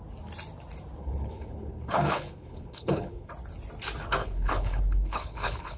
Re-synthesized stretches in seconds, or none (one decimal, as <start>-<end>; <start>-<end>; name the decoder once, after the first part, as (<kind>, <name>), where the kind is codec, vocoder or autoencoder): 1.0-3.3 (codec, HILCodec); 4.2-5.8